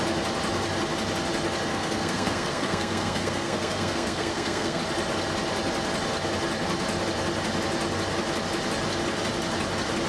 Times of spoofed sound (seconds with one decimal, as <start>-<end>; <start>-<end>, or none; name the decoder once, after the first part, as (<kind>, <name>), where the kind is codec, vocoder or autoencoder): 1.7-4.8 (codec, SNAC)